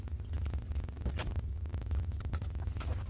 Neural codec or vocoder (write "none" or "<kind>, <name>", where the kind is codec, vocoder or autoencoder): none